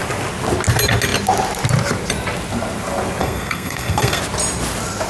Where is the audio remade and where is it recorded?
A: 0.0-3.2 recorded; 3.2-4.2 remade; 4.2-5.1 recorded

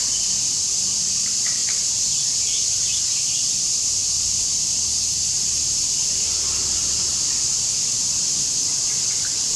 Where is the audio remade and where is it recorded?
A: 0.0-9.6 remade

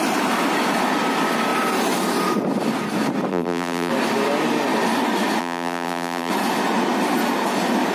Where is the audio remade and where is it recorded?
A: 0.0-3.3 recorded; 3.3-3.9 remade; 3.9-5.4 recorded; 5.4-6.3 remade; 6.3-7.9 recorded

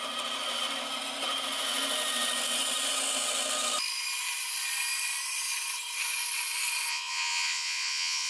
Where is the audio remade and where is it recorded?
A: 0.0-6.9 recorded; 6.9-8.3 remade

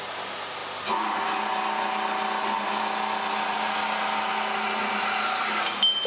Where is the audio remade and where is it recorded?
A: 0.0-6.1 recorded

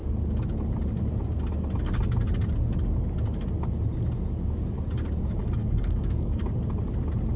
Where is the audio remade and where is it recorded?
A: 0.0-5.4 recorded; 5.4-6.4 remade; 6.4-7.4 recorded